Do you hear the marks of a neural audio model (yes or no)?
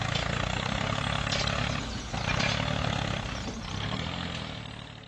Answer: no